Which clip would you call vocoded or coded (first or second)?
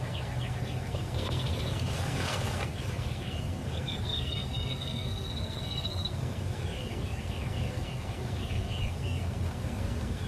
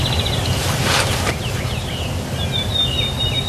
first